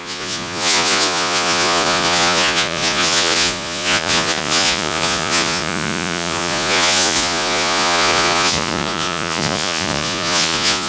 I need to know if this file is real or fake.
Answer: fake